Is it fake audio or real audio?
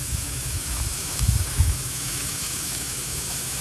fake